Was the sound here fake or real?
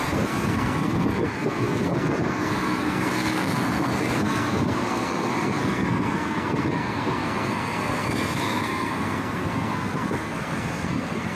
fake